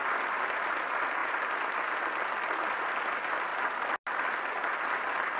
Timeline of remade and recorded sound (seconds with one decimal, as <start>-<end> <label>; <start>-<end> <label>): 0.0-5.4 recorded